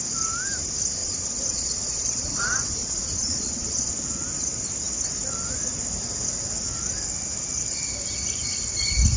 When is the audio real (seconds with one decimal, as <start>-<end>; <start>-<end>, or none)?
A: 0.0-1.0; 2.4-2.8; 3.9-9.2